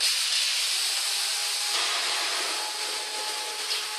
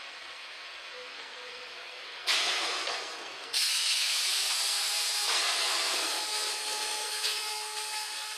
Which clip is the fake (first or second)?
second